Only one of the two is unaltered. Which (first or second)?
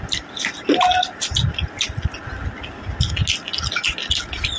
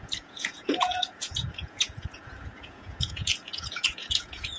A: first